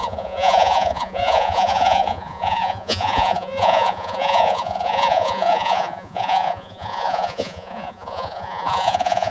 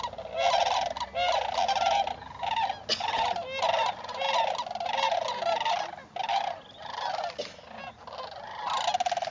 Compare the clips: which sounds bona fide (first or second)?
second